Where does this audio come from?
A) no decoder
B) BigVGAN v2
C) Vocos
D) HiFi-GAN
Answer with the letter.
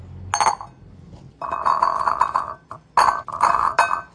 A